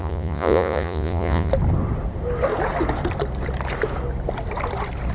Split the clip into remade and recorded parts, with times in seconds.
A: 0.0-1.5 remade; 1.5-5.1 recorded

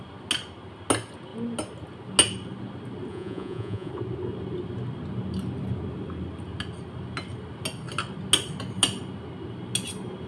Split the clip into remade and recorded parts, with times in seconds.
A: 0.0-3.1 recorded; 3.1-3.9 remade; 3.9-10.3 recorded

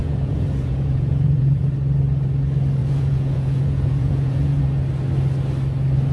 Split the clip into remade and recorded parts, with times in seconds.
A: 0.0-1.6 remade; 1.6-2.8 recorded; 2.8-4.6 remade; 4.6-6.1 recorded

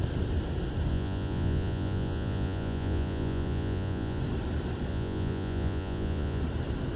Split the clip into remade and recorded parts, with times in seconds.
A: 0.0-0.9 recorded; 0.9-4.2 remade; 4.2-4.9 recorded; 4.9-6.4 remade; 6.4-7.0 recorded

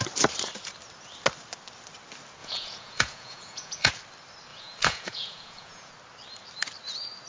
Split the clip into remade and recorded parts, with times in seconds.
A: 0.0-2.4 recorded; 2.4-3.9 remade; 3.9-4.5 recorded; 4.5-5.9 remade; 5.9-7.3 recorded

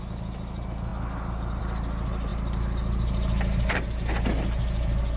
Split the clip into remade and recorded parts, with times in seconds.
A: 0.0-5.2 recorded